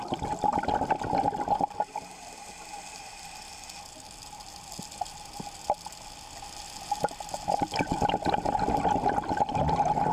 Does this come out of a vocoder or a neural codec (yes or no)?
no